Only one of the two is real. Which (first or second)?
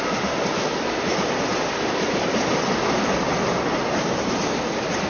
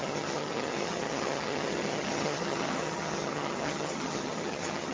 first